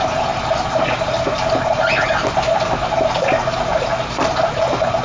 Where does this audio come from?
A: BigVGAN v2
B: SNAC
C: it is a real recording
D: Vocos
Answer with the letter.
C